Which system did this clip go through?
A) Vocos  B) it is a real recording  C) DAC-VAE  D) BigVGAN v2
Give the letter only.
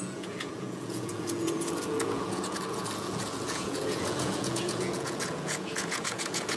A